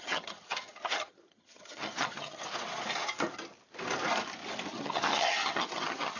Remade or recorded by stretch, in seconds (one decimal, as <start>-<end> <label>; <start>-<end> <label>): 0.0-2.4 remade; 2.4-4.7 recorded; 4.7-6.2 remade